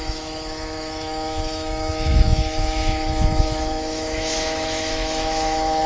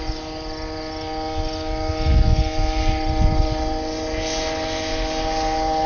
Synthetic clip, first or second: first